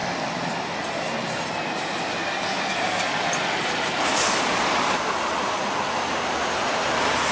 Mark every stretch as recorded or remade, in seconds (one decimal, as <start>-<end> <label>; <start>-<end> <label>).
0.0-4.4 recorded; 4.4-7.3 remade